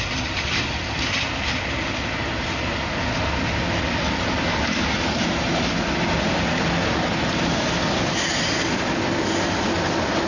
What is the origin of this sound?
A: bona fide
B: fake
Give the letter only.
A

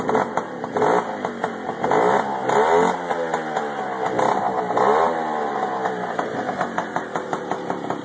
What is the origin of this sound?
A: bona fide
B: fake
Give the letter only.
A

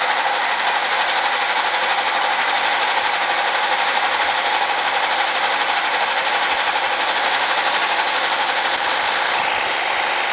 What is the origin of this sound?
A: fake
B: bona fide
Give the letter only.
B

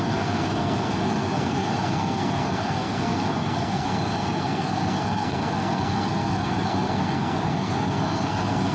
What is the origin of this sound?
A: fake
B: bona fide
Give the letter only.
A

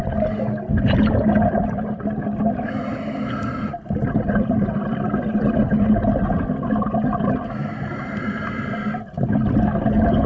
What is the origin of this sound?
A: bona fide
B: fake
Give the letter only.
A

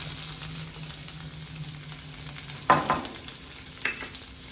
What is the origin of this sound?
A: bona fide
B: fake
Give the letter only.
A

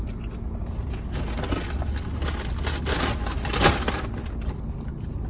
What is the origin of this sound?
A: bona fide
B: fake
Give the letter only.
A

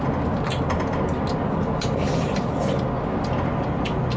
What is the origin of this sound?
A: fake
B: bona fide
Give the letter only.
B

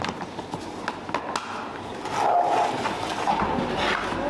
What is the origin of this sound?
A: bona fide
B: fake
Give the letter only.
A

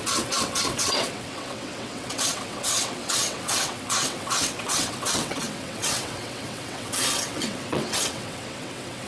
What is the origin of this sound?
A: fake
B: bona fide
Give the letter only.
A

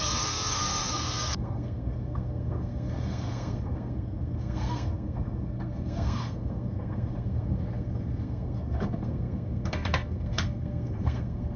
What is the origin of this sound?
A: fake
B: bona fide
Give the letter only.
A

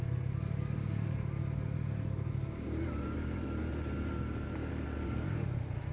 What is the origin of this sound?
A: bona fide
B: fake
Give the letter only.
A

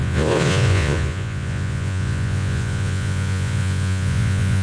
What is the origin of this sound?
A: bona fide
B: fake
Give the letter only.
B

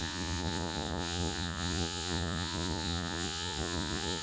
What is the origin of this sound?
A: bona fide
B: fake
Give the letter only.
B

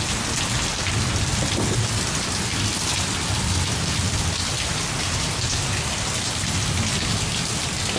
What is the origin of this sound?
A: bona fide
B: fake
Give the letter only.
A